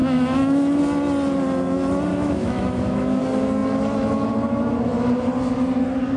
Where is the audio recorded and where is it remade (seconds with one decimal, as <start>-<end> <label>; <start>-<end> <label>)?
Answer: 0.0-0.8 remade; 0.8-2.1 recorded; 2.1-3.2 remade; 3.2-6.2 recorded